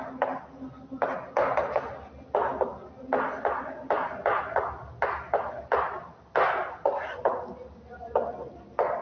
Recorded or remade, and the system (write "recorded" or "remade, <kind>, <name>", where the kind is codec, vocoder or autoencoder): recorded